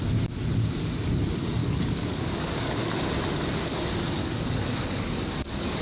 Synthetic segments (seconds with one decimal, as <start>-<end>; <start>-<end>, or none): 1.6-2.7; 4.2-5.8

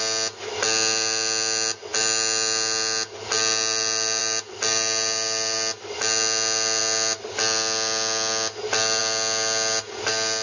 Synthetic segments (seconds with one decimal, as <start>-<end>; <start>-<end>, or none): none

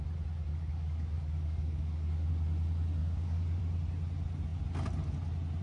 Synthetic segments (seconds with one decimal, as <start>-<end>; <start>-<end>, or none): 0.5-2.3; 3.0-3.6

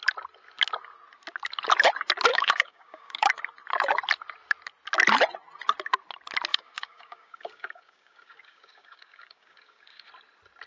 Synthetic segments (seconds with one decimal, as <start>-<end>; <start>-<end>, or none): 2.3-3.3; 6.5-10.1

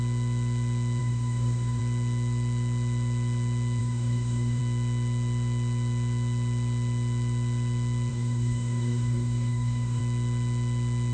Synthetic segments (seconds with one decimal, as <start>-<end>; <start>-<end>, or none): 1.0-1.8; 3.8-4.6; 8.1-10.0